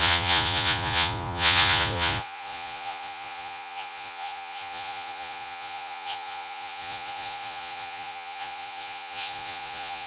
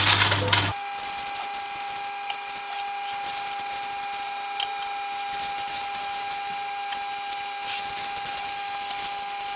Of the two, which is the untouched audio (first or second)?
second